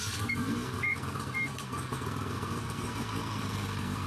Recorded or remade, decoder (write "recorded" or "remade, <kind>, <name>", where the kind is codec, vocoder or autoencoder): remade, codec, SNAC